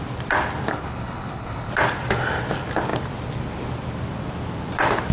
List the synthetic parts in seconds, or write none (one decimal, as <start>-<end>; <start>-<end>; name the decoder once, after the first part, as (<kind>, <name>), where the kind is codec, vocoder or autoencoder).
0.7-1.7 (codec, HILCodec)